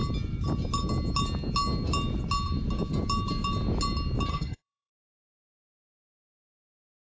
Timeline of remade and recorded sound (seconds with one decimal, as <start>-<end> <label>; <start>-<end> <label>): 0.0-4.3 recorded; 4.3-4.9 remade; 4.9-7.0 recorded